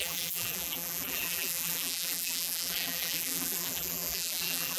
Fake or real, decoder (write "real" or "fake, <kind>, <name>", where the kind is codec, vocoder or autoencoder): fake, vocoder, BigVGAN v2